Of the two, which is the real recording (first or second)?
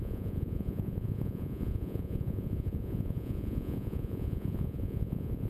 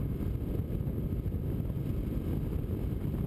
second